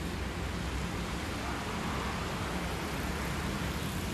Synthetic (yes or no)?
no